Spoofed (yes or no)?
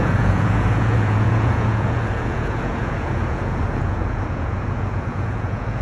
yes